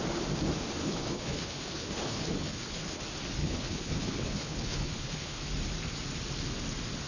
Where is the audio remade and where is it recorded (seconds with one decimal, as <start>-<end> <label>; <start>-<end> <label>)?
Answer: 0.0-0.8 recorded; 0.8-3.0 remade; 3.0-3.4 recorded; 3.4-5.4 remade; 5.4-7.1 recorded